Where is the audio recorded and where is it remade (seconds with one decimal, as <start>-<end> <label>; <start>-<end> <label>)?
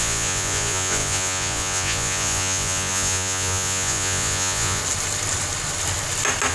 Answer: 0.0-4.8 remade; 4.8-6.5 recorded